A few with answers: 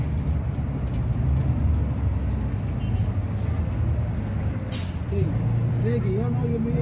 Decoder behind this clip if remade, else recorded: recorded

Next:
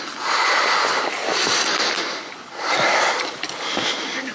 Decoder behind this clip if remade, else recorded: recorded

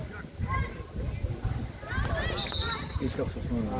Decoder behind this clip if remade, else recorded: recorded